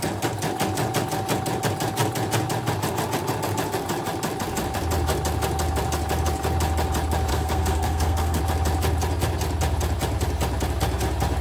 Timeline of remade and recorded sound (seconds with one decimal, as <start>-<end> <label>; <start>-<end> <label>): 0.0-7.3 recorded; 7.3-8.4 remade; 8.4-11.4 recorded